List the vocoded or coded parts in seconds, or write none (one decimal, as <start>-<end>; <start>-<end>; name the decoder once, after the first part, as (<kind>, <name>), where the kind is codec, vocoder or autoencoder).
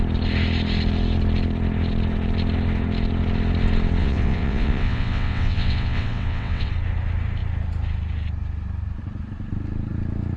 4.0-6.7 (vocoder, WaveNeXt)